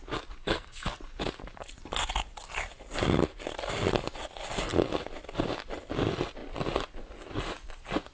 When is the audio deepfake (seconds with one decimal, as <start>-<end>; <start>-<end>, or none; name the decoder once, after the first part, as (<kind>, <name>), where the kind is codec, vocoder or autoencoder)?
0.4-1.0 (codec, SNAC)